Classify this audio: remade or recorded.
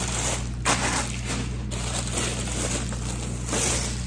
recorded